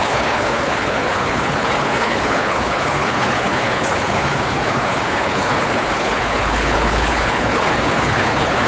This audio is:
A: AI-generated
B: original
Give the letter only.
A